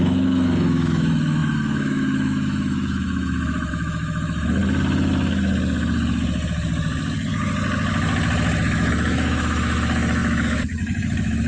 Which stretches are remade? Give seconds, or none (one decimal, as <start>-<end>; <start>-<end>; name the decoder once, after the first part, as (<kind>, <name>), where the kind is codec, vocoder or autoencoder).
0.0-4.6 (autoencoder, DAC-VAE); 8.6-11.5